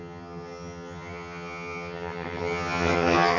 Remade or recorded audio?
remade